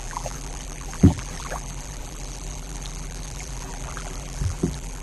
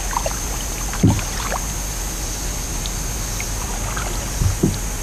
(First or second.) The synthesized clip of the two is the first